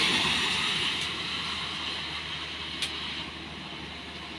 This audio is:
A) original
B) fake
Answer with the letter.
A